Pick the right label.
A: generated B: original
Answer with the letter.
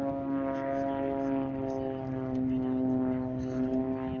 B